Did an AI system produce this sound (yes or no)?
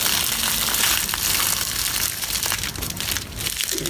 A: no